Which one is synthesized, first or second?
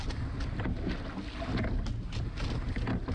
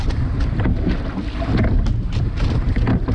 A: second